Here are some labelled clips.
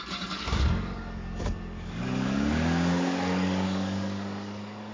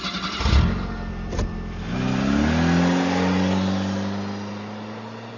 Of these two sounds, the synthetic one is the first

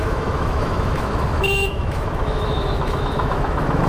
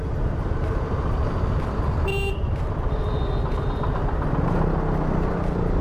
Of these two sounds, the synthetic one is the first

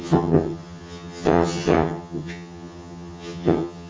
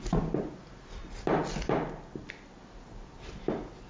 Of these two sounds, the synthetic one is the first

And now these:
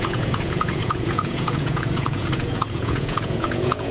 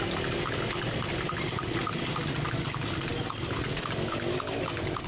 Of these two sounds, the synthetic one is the first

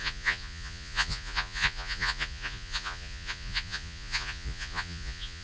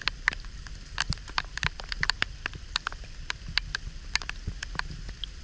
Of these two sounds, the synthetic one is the first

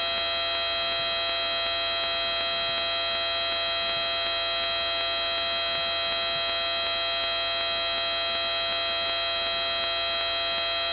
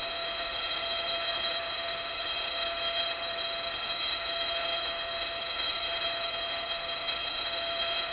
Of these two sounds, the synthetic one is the second